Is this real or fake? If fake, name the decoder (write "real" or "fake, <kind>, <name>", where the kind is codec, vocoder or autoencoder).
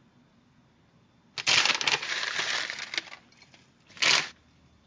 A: real